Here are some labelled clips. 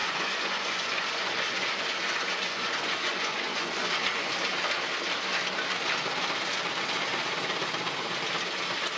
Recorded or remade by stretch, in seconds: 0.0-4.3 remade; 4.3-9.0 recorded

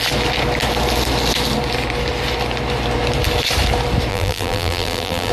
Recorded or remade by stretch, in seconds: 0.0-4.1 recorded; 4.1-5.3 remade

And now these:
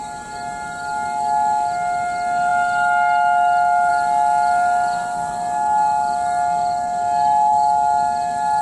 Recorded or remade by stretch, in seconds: 0.0-8.6 recorded

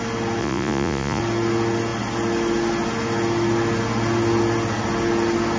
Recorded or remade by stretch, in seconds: 0.0-0.4 recorded; 0.4-1.2 remade; 1.2-5.6 recorded

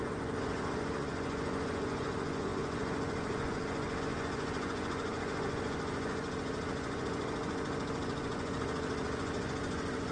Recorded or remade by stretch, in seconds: 0.0-10.1 remade

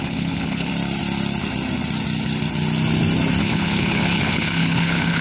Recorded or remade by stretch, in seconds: 0.0-0.7 remade; 0.7-3.4 recorded; 3.4-5.2 remade

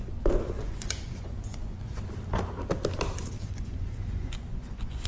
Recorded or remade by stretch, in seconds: 0.0-0.6 recorded; 0.6-2.0 remade; 2.0-3.4 recorded; 3.4-5.1 remade

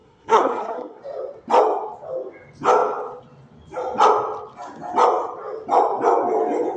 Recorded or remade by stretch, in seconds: 0.0-1.0 remade; 1.0-6.8 recorded